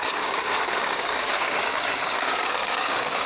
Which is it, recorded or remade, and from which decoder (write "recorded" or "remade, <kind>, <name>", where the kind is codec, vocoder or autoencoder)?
remade, codec, DAC